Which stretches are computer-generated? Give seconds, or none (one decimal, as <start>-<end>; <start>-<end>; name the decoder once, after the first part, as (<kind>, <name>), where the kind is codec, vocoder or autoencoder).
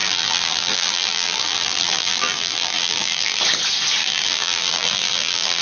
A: 0.0-3.4 (vocoder, BigVGAN v2); 4.0-5.6